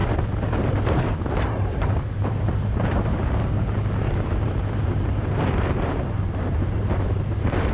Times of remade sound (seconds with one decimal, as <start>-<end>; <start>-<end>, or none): 0.0-7.7